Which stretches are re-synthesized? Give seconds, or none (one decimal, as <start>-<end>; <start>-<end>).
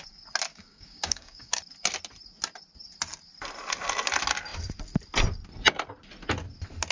0.5-1.6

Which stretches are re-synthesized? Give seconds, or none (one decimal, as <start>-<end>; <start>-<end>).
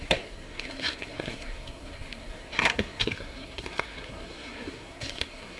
0.0-5.6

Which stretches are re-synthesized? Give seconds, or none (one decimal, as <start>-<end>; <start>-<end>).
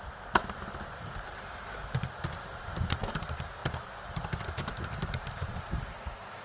0.0-6.4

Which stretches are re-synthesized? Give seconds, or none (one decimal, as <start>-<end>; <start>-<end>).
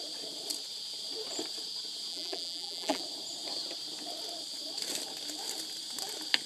2.1-3.0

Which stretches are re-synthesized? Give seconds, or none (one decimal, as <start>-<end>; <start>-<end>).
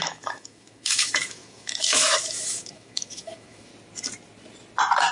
0.0-3.7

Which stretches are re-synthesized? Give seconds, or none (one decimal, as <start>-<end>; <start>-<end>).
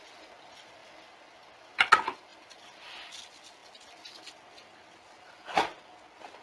none